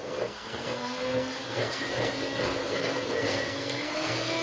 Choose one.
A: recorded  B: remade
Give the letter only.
B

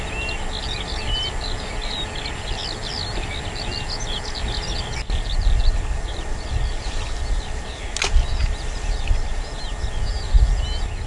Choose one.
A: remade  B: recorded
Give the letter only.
B